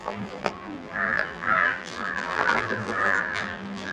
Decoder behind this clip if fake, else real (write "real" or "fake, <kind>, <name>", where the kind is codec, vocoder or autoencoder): fake, vocoder, BigVGAN v2